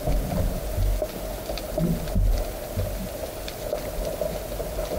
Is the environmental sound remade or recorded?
recorded